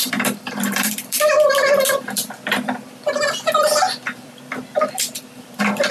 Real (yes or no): no